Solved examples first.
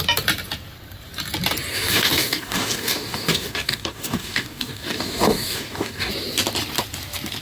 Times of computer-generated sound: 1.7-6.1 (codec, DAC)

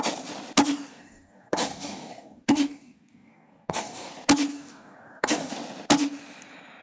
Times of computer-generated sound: 0.9-4.1 (codec, DAC); 4.5-5.5